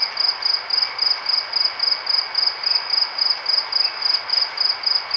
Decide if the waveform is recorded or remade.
recorded